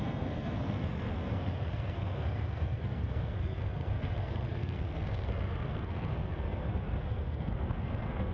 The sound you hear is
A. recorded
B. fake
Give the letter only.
B